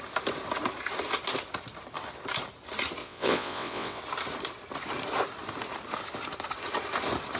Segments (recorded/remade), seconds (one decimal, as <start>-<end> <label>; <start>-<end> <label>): 0.0-3.0 recorded; 3.0-4.0 remade; 4.0-7.4 recorded